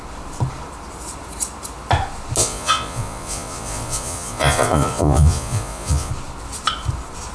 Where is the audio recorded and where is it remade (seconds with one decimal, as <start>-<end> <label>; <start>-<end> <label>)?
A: 0.0-2.4 recorded; 2.4-6.1 remade; 6.1-7.3 recorded